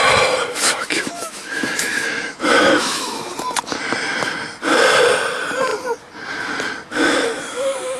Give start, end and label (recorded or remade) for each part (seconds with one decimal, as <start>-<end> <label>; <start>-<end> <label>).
0.0-0.5 recorded; 0.5-3.3 remade; 3.3-6.9 recorded; 6.9-8.0 remade